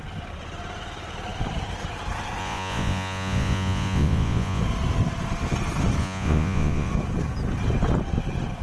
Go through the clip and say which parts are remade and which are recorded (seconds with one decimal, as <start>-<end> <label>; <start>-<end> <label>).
0.0-2.4 recorded; 2.4-4.6 remade; 4.6-6.0 recorded; 6.0-6.9 remade; 6.9-8.6 recorded